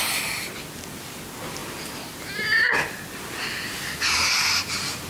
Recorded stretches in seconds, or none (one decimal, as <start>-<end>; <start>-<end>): 0.0-5.1